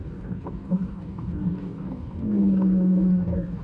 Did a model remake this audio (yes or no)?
yes